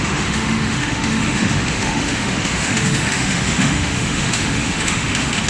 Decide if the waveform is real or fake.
fake